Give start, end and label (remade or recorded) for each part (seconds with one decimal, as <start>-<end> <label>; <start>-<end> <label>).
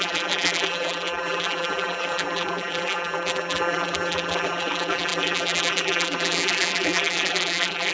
0.0-7.9 remade